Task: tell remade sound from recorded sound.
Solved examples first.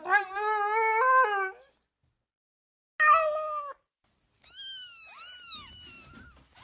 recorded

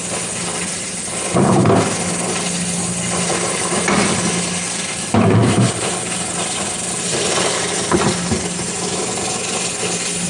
recorded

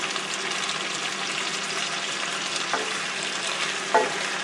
recorded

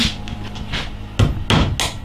recorded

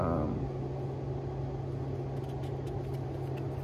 recorded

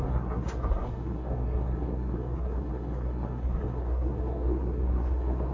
remade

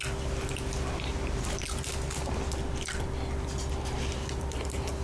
recorded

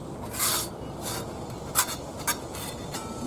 recorded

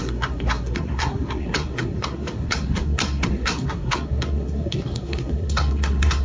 remade